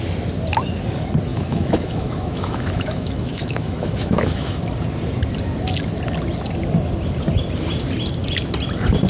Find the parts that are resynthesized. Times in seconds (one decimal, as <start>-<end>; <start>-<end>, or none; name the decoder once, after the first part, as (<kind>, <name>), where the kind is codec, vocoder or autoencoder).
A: 1.3-4.6 (autoencoder, DAC-VAE)